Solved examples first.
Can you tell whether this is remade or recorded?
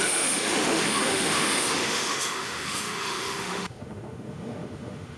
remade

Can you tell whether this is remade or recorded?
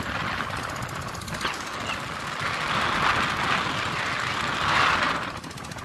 recorded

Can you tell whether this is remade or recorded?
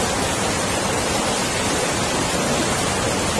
recorded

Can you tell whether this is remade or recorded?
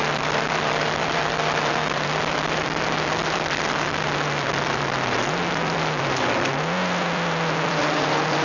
remade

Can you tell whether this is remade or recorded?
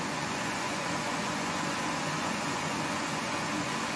remade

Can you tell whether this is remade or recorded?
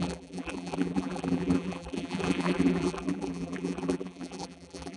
remade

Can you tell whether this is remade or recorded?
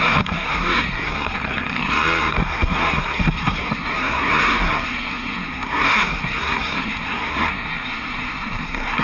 remade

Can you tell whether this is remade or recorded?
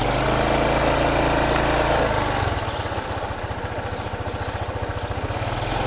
recorded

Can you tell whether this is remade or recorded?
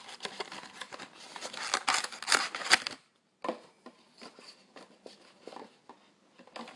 recorded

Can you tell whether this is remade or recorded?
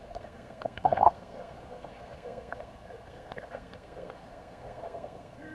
remade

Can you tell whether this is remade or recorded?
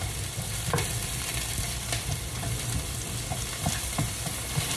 remade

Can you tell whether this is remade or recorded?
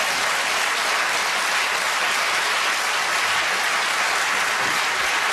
recorded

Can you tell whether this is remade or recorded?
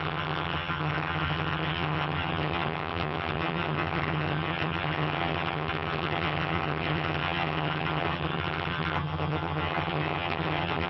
remade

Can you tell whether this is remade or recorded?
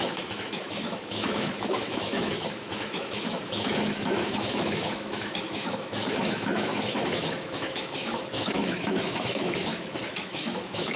remade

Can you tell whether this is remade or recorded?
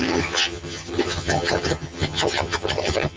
remade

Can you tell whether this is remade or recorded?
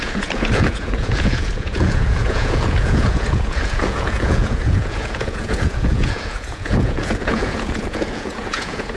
remade